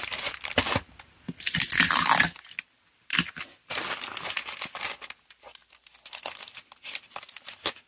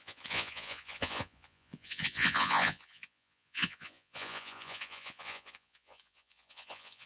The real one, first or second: first